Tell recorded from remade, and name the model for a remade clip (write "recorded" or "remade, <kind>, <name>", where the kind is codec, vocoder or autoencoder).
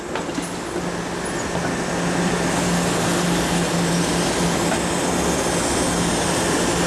recorded